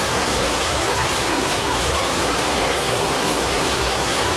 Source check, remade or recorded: remade